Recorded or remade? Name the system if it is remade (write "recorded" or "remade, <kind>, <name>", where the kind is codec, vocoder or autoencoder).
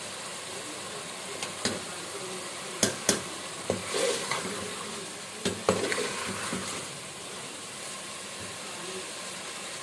recorded